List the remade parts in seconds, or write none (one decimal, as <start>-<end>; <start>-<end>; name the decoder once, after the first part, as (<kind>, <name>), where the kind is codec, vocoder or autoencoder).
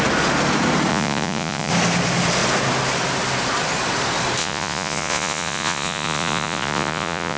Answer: 0.9-1.7 (vocoder, Vocos); 4.4-7.4